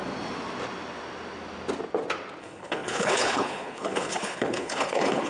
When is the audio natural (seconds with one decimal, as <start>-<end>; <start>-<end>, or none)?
0.0-2.4